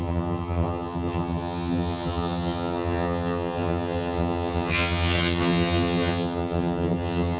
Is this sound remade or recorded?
remade